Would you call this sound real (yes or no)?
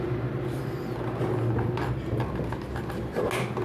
yes